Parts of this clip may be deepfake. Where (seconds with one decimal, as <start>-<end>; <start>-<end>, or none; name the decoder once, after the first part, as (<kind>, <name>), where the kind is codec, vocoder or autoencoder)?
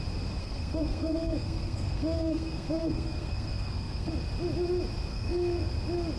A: 0.4-4.1 (codec, SNAC); 5.1-5.7